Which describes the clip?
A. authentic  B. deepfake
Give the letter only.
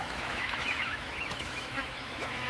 B